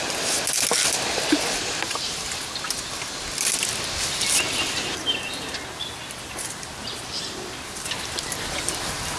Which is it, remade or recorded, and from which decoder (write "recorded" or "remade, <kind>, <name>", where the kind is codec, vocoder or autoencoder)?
recorded